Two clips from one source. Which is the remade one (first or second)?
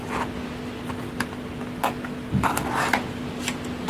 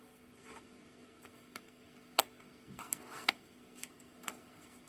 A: second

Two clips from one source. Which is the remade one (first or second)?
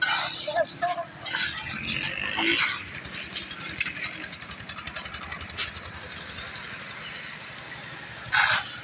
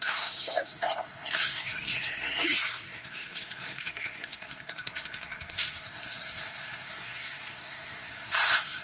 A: second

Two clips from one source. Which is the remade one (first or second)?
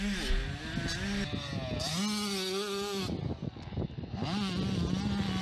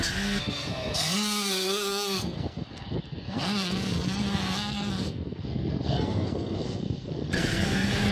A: second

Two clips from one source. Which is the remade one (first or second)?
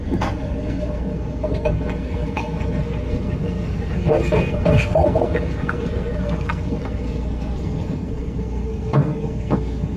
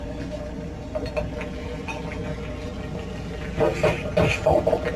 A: first